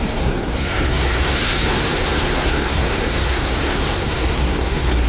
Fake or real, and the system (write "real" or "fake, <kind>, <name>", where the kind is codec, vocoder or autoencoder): fake, codec, SNAC